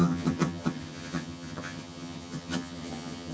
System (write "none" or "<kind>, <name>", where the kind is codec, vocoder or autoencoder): vocoder, HiFi-GAN